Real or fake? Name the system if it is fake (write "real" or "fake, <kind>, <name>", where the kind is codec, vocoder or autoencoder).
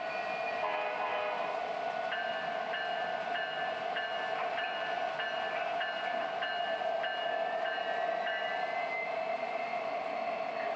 real